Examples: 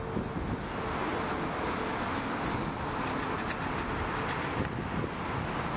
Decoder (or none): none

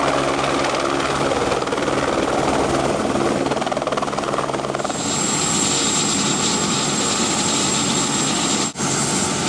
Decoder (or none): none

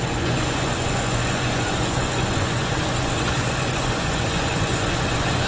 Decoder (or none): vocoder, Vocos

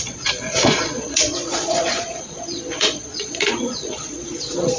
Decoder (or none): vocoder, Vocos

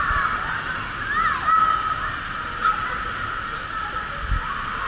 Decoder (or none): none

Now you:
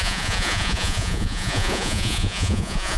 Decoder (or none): vocoder, Vocos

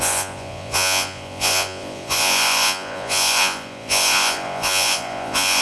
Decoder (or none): vocoder, Vocos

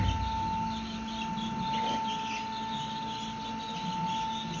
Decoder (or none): none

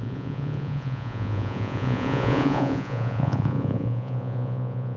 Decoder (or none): vocoder, Vocos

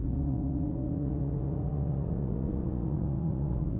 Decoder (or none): vocoder, Vocos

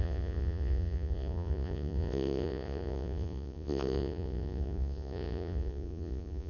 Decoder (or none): vocoder, Vocos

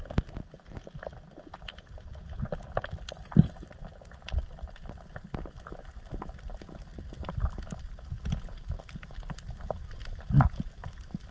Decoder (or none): none